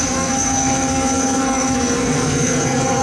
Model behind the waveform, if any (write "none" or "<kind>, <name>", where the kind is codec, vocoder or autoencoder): codec, SNAC